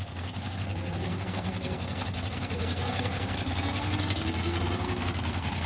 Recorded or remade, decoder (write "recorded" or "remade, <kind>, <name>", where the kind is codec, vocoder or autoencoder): remade, codec, SNAC